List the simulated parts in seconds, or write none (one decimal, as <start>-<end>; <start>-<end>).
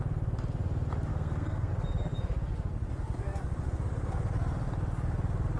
1.1-1.7